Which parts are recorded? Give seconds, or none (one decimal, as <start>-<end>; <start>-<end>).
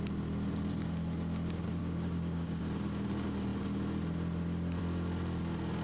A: 0.0-1.8; 2.6-5.8